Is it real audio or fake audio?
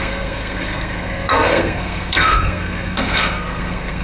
fake